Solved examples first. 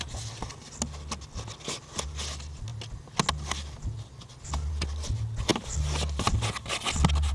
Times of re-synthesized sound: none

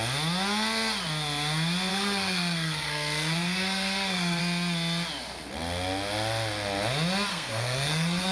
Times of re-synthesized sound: 1.9-4.4 (codec, SNAC); 7.3-8.3

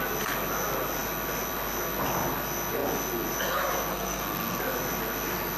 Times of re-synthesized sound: 3.9-4.6 (codec, SNAC)

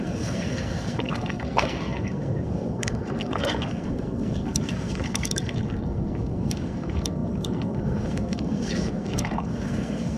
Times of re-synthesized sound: 0.0-10.2 (codec, SNAC)

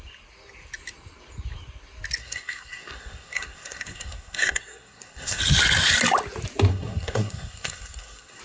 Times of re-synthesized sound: 2.2-5.4 (codec, SNAC); 6.7-8.4